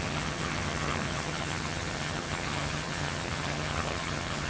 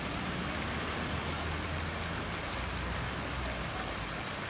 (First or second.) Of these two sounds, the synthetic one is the first